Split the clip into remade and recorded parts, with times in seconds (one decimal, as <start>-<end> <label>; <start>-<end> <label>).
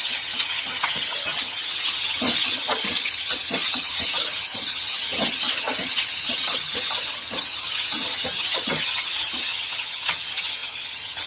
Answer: 0.0-11.3 remade